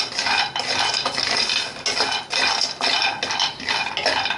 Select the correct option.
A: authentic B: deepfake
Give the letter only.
A